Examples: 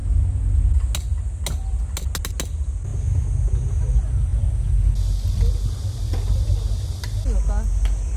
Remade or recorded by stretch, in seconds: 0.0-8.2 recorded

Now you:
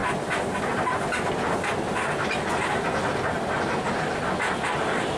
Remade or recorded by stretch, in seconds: 0.0-5.2 recorded

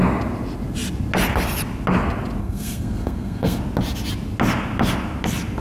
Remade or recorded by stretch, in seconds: 0.0-2.4 recorded; 2.4-3.6 remade; 3.6-5.6 recorded

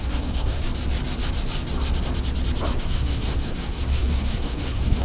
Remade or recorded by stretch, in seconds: 0.0-0.6 remade; 0.6-2.8 recorded; 2.8-5.0 remade

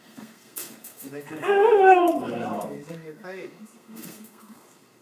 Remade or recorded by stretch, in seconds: 0.0-5.0 remade

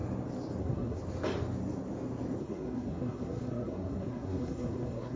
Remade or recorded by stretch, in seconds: 0.0-0.6 recorded; 0.6-1.0 remade; 1.0-2.4 recorded; 2.4-5.2 remade

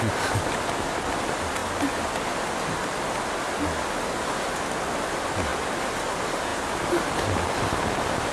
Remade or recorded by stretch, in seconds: 0.0-8.3 recorded